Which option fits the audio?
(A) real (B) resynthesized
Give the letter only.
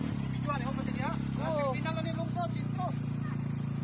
A